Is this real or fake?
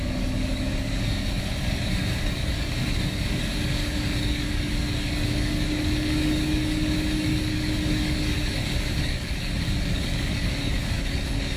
fake